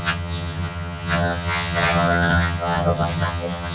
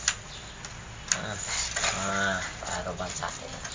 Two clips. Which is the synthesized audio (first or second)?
first